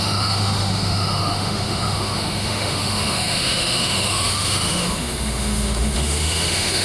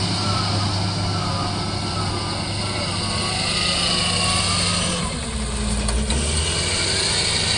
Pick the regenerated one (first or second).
first